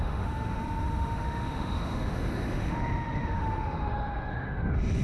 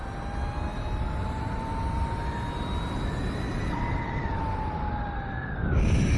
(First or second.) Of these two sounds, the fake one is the first